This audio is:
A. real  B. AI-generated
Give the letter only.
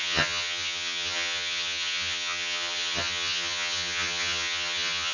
B